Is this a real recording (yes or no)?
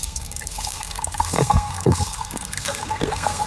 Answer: no